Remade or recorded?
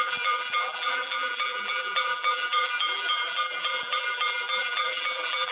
remade